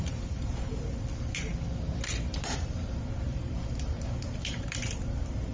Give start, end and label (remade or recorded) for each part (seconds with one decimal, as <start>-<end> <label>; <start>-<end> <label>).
0.0-1.5 remade; 1.5-2.1 recorded; 2.1-5.5 remade